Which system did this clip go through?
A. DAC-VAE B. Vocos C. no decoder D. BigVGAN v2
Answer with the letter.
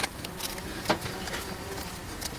C